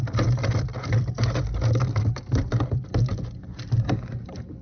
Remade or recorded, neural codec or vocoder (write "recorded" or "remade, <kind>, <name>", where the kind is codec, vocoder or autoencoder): recorded